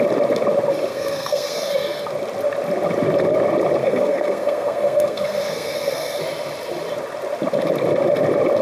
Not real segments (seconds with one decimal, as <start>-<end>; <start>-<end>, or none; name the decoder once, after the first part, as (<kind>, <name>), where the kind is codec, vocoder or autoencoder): 0.9-2.0 (codec, SNAC); 3.8-6.2